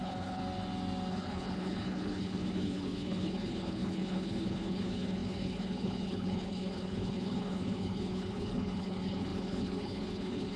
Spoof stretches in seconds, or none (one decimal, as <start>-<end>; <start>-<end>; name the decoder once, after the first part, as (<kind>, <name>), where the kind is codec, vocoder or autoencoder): 0.0-0.4 (codec, HILCodec); 1.1-10.6